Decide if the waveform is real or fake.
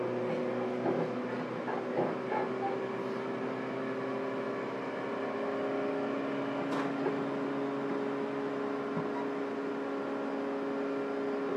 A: real